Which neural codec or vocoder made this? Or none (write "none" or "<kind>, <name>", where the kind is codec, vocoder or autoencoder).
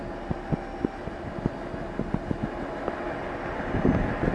none